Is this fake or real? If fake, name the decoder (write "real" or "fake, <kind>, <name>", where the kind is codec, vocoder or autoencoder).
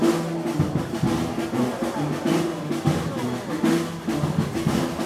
real